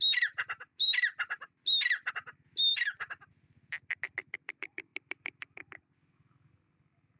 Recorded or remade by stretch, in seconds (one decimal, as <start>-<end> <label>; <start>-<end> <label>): 0.0-7.2 recorded